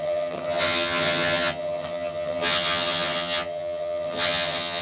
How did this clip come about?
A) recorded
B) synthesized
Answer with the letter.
B